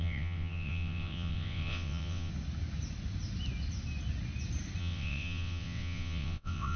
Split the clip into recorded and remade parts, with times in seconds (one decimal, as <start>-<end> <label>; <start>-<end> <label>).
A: 0.0-2.3 remade; 2.3-4.8 recorded; 4.8-6.8 remade